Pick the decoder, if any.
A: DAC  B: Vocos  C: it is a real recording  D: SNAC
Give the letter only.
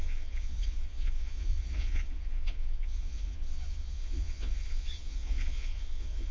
B